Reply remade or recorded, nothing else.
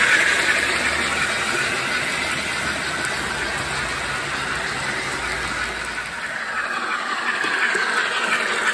recorded